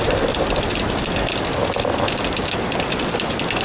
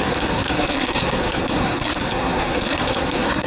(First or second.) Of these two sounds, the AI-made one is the second